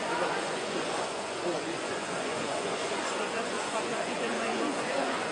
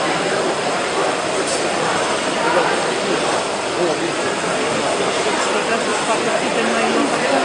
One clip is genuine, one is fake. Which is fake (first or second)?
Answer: first